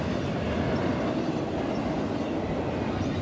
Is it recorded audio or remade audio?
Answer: recorded